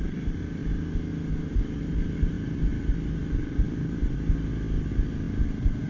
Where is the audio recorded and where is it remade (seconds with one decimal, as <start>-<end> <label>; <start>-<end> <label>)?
0.0-5.9 recorded